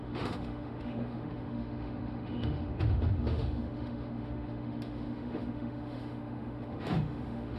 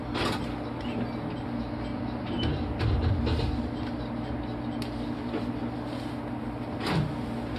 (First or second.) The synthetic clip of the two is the first